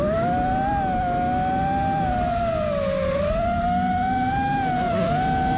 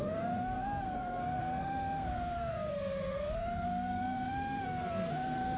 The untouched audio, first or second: first